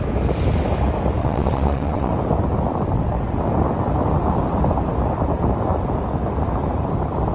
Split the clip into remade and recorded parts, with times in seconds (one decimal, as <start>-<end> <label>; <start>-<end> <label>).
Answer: 0.0-1.2 recorded; 1.2-2.1 remade; 2.1-7.3 recorded